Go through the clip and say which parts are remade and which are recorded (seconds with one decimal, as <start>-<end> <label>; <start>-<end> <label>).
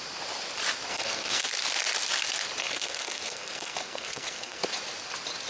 0.0-0.9 recorded; 0.9-1.5 remade; 1.5-2.6 recorded; 2.6-4.6 remade; 4.6-5.5 recorded